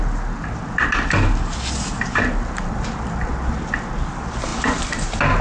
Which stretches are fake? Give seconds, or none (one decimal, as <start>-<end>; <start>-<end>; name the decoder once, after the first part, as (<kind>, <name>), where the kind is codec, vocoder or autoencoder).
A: none